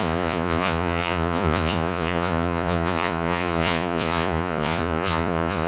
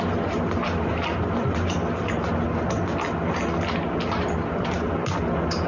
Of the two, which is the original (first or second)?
second